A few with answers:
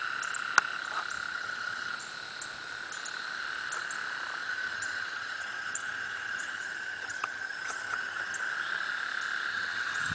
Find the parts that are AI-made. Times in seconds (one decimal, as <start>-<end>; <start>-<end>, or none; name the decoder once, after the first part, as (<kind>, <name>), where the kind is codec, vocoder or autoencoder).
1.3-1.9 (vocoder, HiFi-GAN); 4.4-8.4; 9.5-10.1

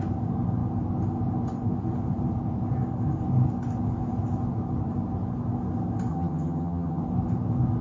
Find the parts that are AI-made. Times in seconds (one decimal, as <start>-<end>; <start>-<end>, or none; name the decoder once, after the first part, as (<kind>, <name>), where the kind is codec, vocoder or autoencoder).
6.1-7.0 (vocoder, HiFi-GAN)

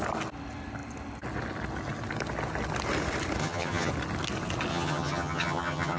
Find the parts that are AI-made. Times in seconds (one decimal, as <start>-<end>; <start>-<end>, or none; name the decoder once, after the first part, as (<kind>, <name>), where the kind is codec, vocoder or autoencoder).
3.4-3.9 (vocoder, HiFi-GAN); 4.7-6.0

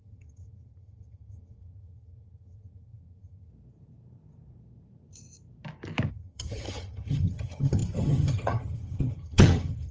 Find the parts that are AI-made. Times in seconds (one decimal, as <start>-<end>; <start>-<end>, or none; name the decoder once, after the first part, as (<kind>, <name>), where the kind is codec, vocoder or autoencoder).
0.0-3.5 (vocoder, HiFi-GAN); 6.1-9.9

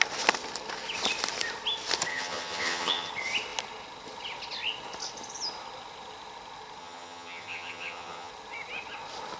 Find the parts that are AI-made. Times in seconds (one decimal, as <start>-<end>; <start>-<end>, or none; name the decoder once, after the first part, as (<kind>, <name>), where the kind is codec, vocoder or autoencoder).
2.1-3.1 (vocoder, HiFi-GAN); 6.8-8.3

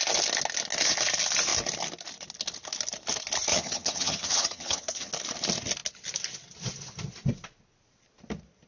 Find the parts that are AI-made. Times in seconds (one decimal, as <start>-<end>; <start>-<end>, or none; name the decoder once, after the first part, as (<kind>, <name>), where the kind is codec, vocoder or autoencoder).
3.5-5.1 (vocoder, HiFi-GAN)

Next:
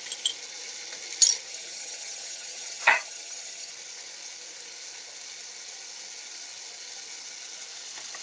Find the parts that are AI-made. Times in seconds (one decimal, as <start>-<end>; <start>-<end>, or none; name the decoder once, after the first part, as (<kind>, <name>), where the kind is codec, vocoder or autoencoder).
1.5-3.7 (vocoder, HiFi-GAN)

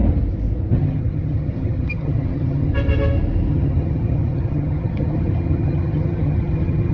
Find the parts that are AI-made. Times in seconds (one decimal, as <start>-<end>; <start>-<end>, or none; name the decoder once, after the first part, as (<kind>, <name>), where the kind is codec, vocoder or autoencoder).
0.7-2.7 (vocoder, HiFi-GAN); 3.5-6.9